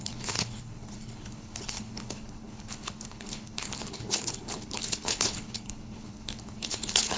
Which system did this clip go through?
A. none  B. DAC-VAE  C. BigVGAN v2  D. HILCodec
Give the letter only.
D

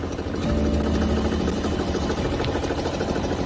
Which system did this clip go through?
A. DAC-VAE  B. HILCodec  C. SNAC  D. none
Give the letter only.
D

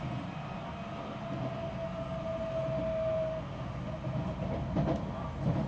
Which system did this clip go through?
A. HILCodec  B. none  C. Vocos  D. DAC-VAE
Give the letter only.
B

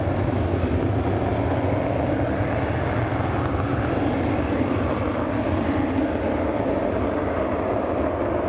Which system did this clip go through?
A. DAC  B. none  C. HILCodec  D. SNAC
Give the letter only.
B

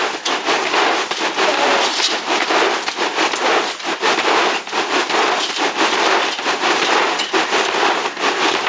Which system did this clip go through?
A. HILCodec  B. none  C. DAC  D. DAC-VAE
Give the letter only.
B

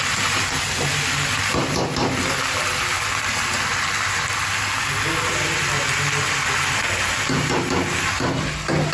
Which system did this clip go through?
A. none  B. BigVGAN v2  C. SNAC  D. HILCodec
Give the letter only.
A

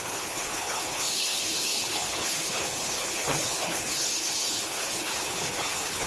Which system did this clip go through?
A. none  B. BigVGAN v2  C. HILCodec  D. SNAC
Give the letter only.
C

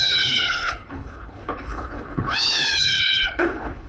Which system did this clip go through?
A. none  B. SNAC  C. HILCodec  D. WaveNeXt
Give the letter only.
C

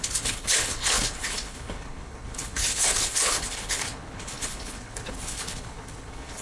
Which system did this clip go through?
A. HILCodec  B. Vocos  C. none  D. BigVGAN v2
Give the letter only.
A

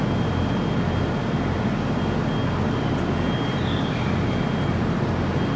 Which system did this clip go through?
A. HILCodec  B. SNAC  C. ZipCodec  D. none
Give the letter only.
D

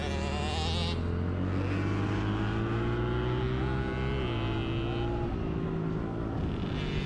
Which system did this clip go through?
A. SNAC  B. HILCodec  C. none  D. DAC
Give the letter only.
C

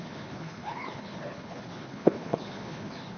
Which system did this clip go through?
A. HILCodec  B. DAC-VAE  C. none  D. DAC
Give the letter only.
A